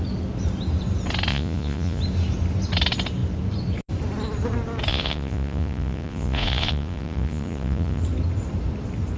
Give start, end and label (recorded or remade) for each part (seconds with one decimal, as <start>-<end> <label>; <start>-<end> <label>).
0.0-1.3 recorded; 1.3-2.0 remade; 2.0-4.9 recorded; 4.9-8.0 remade; 8.0-9.2 recorded